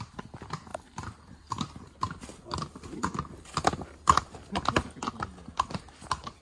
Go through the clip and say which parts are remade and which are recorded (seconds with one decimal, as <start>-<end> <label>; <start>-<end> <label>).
0.0-0.7 recorded; 0.7-4.5 remade; 4.5-6.4 recorded